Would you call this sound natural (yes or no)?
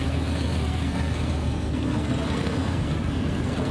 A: no